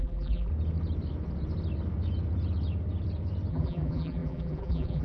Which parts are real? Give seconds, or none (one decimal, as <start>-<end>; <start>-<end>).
0.5-3.5